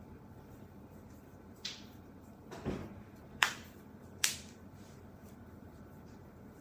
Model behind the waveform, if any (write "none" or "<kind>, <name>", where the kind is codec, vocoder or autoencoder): vocoder, BigVGAN v2